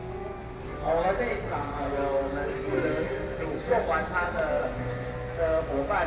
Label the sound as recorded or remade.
recorded